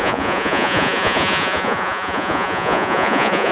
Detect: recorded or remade remade